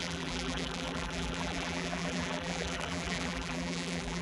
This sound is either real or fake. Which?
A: fake